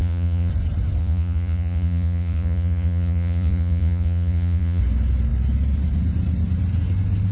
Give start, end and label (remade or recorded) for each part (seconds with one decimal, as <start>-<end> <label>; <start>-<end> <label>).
0.0-0.5 remade; 0.5-1.0 recorded; 1.0-4.8 remade; 4.8-7.3 recorded